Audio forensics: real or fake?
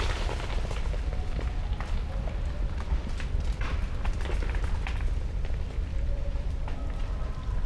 real